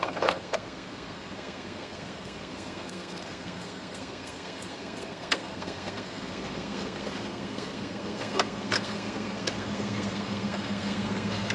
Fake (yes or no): yes